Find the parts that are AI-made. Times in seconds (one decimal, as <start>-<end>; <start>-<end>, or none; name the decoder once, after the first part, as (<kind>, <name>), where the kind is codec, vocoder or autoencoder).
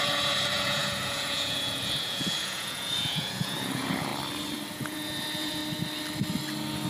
0.0-4.1 (vocoder, Vocos); 4.7-5.6